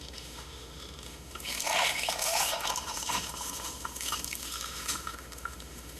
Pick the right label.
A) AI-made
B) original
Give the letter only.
A